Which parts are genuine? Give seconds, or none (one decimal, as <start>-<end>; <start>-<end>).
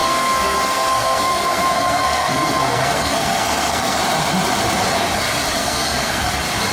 4.0-5.6; 6.3-6.7